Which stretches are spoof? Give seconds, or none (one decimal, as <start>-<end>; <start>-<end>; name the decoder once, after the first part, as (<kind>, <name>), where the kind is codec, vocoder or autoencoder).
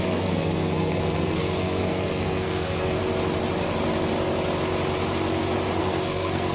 0.0-3.0 (codec, SNAC); 5.8-6.5